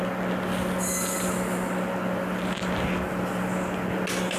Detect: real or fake real